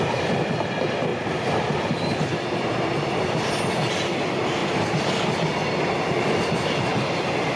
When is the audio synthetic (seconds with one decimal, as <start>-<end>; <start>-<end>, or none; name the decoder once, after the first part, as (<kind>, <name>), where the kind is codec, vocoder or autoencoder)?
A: 1.1-3.7 (vocoder, BigVGAN v2)